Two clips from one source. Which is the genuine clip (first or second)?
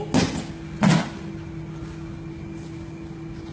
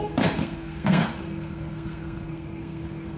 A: first